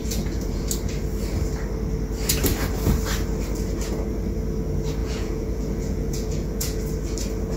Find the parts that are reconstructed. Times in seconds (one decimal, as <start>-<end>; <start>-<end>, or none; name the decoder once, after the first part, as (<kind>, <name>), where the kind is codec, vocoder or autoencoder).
0.0-0.6 (vocoder, Vocos); 5.0-6.8